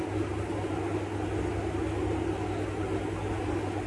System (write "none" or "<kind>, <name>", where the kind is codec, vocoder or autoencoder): none